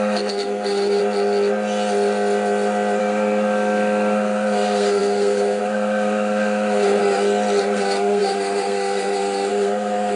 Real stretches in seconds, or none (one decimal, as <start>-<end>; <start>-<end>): 1.0-3.0; 7.0-7.6